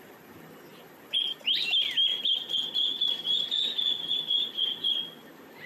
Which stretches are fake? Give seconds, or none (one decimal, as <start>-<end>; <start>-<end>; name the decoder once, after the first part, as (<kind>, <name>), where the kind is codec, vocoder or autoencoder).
0.7-1.6 (vocoder, BigVGAN v2); 2.1-5.7

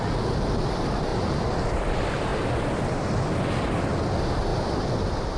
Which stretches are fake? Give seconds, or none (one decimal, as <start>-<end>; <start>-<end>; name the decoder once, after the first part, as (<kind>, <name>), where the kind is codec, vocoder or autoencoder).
none

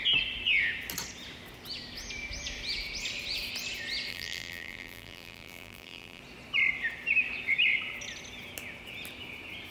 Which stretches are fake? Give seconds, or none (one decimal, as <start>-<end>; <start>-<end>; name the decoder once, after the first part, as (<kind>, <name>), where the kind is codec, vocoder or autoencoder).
4.1-6.2 (vocoder, BigVGAN v2)

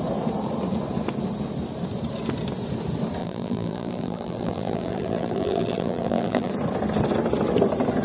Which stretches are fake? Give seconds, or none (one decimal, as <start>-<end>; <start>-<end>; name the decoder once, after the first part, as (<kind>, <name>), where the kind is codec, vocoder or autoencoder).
3.2-6.5 (vocoder, BigVGAN v2)

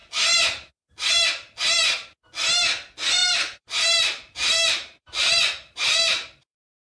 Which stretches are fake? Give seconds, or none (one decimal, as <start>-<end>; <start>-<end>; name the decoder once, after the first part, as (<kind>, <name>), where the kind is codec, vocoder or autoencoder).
3.2-6.9 (vocoder, BigVGAN v2)

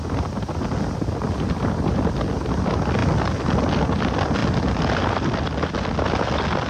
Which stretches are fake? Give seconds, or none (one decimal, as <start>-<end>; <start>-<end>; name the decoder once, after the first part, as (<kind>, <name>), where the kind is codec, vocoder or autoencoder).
none

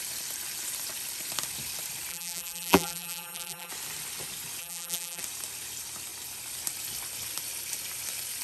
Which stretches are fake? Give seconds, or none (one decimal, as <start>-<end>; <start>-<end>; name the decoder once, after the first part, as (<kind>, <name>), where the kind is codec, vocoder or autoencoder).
2.1-3.7 (vocoder, BigVGAN v2); 4.6-5.2

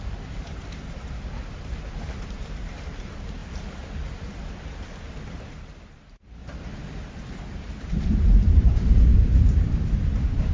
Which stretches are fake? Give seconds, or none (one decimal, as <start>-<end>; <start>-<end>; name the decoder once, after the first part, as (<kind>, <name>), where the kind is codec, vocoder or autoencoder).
0.0-3.4 (vocoder, BigVGAN v2); 5.4-6.4; 7.0-10.5